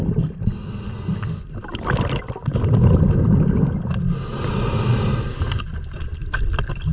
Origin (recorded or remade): recorded